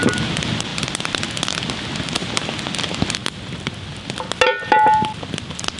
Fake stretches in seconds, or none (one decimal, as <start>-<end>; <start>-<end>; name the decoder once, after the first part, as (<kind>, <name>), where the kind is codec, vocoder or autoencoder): none